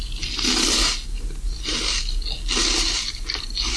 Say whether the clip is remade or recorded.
recorded